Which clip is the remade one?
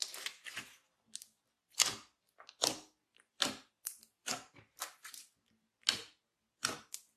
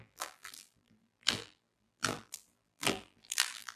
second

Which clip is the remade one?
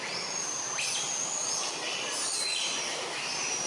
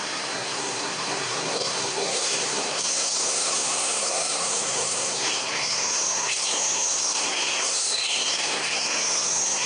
second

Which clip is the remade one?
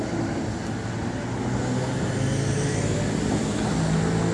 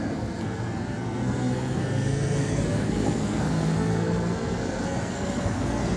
second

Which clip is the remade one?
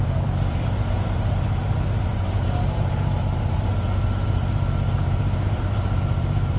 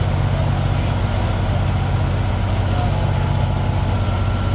first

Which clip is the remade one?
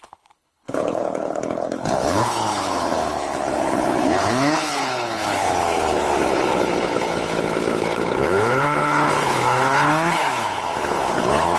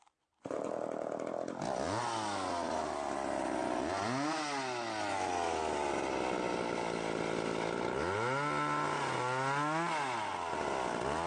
first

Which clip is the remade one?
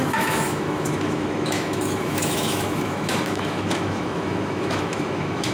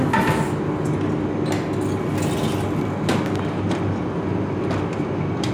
first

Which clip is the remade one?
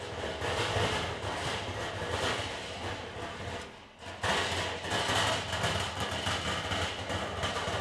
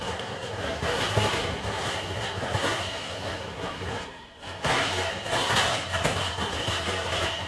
second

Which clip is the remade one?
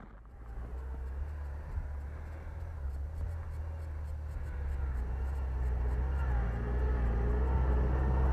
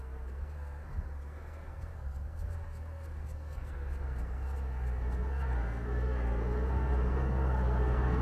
second